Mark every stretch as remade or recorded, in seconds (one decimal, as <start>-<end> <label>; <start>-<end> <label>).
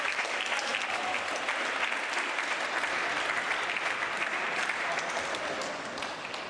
0.0-6.5 recorded